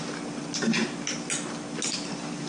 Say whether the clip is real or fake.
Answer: real